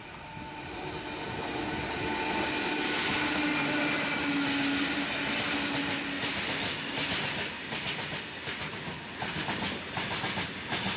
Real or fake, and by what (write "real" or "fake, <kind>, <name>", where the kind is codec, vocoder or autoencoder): real